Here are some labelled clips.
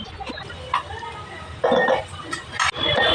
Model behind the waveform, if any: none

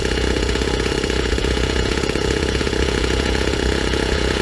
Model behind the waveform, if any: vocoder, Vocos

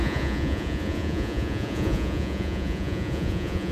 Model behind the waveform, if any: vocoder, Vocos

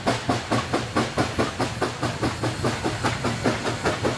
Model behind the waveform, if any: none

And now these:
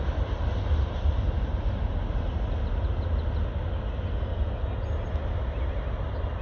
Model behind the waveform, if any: none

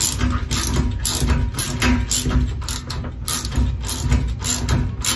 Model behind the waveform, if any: none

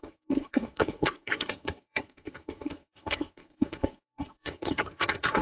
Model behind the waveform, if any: codec, SNAC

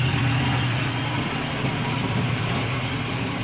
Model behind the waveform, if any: none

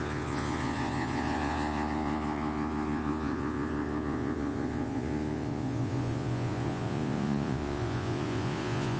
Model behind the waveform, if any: vocoder, Vocos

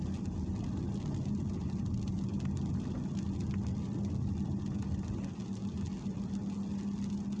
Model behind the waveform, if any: none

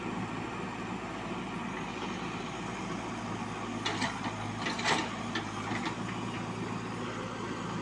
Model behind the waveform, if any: none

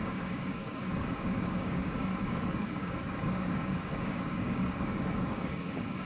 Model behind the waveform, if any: codec, DAC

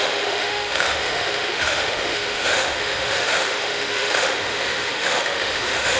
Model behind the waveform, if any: autoencoder, DAC-VAE